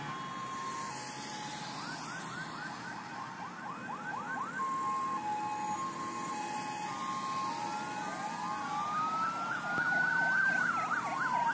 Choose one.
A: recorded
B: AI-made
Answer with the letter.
A